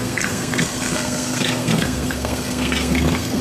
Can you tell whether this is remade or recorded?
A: remade